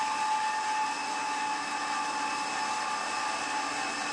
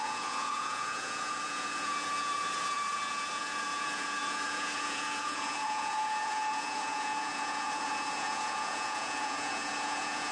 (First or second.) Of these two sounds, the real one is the first